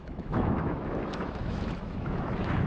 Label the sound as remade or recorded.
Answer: remade